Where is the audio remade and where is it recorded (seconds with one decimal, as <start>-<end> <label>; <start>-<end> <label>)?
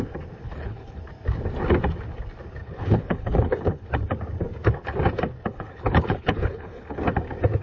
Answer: 0.0-0.4 recorded; 0.4-1.0 remade; 1.0-2.6 recorded; 2.6-3.9 remade; 3.9-5.5 recorded; 5.5-7.0 remade; 7.0-7.6 recorded